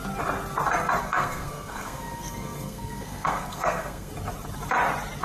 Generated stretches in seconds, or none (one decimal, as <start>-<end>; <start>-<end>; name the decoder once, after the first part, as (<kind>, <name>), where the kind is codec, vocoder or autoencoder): 1.0-4.1 (codec, SNAC)